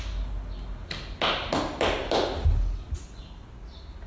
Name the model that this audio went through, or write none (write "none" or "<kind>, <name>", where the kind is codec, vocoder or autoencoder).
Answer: none